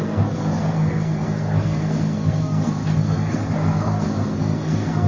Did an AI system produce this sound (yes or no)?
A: yes